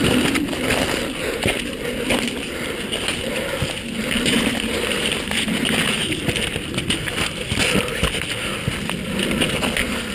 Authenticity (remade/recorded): recorded